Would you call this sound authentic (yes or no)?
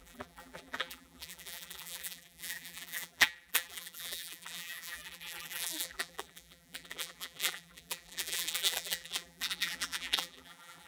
no